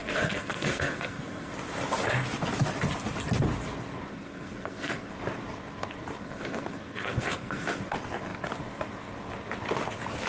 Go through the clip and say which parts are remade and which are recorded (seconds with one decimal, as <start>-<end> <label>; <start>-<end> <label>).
0.0-1.5 remade; 1.5-4.1 recorded; 4.1-5.1 remade; 5.1-6.2 recorded; 6.2-7.8 remade; 7.8-10.3 recorded